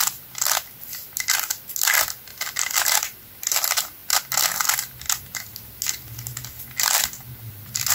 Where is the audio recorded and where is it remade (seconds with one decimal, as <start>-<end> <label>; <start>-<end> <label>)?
0.0-7.9 recorded